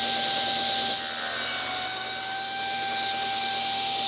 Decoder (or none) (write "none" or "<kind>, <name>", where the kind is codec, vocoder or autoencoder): none